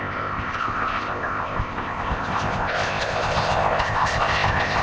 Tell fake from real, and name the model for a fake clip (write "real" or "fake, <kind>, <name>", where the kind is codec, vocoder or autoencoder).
fake, codec, ZipCodec